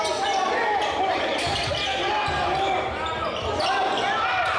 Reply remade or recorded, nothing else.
recorded